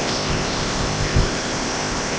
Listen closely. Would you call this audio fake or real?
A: fake